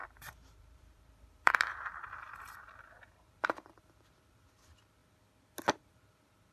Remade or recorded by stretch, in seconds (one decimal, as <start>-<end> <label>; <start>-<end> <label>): 0.0-5.0 remade; 5.0-5.9 recorded; 5.9-6.5 remade

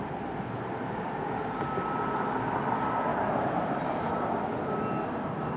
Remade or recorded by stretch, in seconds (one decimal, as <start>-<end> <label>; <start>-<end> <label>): 0.0-3.1 recorded; 3.1-4.2 remade; 4.2-5.6 recorded

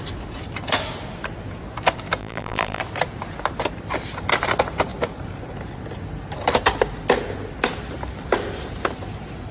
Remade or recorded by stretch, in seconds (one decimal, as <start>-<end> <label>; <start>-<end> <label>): 0.0-2.2 recorded; 2.2-2.8 remade; 2.8-9.5 recorded

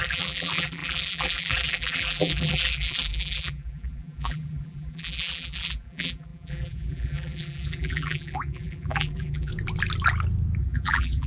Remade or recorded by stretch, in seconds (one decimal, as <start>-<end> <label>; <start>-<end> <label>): 0.0-9.5 remade; 9.5-10.6 recorded; 10.6-11.3 remade

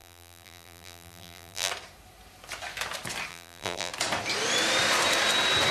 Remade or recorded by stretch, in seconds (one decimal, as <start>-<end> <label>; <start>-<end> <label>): 0.0-1.7 remade; 1.7-3.3 recorded; 3.3-3.9 remade; 3.9-5.7 recorded

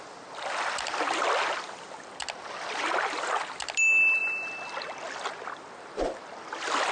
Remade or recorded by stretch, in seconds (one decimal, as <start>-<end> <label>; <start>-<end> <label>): 0.0-6.9 recorded

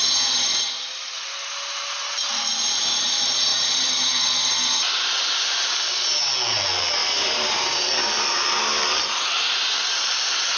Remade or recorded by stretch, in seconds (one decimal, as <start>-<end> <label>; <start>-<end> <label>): 0.0-7.0 recorded; 7.0-9.2 remade; 9.2-10.6 recorded

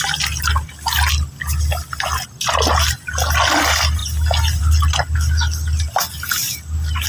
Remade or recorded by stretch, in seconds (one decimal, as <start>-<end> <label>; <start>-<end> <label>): 0.0-7.1 recorded